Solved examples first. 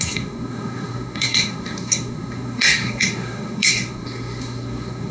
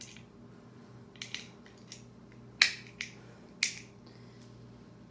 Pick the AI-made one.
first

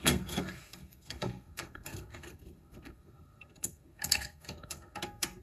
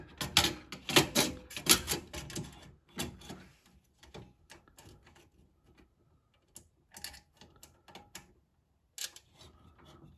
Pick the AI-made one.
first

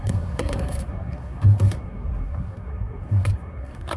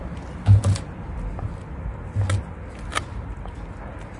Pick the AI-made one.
first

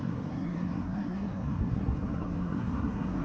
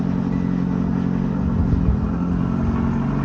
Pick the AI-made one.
first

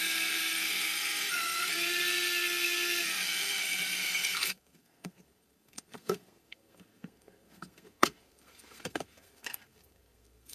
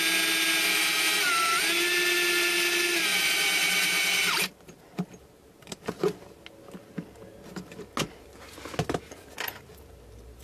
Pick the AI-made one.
first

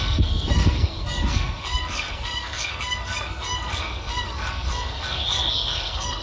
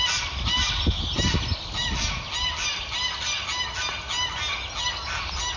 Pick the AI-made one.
first